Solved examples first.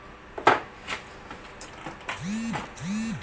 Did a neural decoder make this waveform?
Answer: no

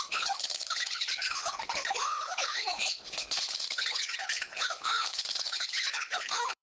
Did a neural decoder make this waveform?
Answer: yes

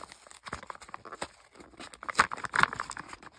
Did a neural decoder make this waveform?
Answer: no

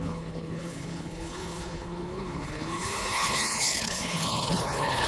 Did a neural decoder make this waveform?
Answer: yes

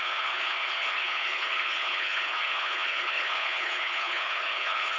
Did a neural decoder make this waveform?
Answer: yes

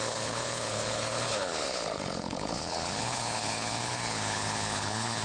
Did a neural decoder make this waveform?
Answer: yes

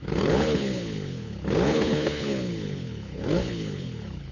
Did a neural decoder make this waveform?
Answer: yes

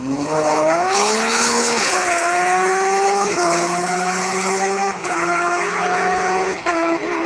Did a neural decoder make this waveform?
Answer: yes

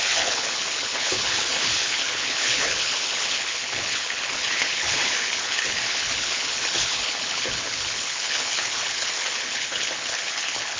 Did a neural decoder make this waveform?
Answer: yes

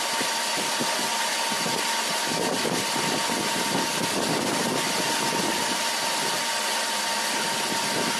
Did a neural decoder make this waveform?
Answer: no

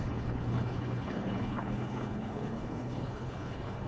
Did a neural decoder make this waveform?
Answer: yes